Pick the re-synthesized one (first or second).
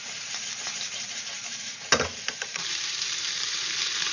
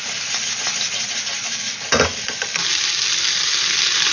first